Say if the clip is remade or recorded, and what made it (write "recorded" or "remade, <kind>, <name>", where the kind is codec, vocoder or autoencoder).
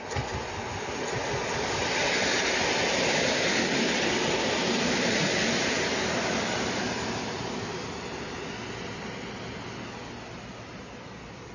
recorded